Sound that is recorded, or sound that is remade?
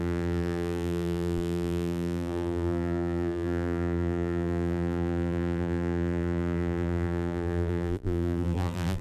remade